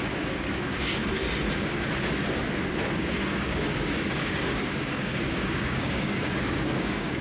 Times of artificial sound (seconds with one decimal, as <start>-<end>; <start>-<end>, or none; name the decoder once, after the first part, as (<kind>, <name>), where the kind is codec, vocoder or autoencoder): 0.0-0.9 (codec, DAC); 3.0-7.2